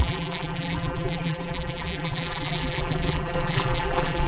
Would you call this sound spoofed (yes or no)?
yes